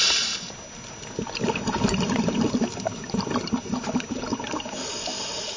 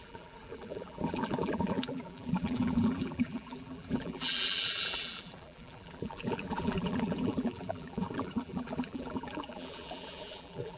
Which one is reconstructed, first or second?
second